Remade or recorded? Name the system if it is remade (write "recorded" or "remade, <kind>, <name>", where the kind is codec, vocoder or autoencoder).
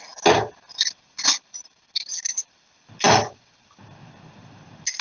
recorded